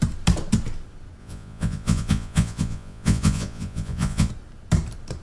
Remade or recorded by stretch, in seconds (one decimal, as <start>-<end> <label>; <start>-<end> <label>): 0.0-1.2 recorded; 1.2-4.3 remade; 4.3-5.2 recorded